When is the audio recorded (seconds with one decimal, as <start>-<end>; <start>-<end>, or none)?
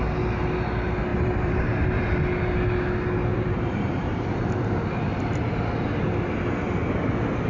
0.0-1.1; 2.0-3.3; 4.5-7.5